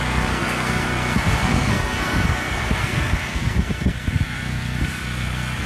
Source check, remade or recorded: remade